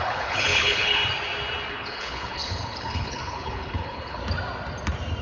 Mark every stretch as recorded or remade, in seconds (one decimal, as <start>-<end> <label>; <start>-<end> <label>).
0.0-1.0 remade; 1.0-1.7 recorded; 1.7-4.2 remade; 4.2-5.2 recorded